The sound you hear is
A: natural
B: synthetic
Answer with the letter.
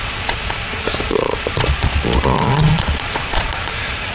B